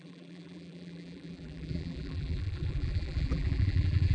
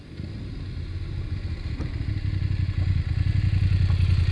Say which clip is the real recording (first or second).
second